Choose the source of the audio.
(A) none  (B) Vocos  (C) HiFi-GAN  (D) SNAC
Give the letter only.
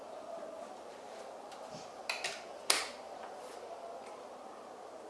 A